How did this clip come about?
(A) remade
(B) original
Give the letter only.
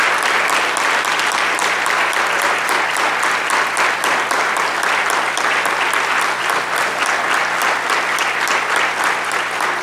B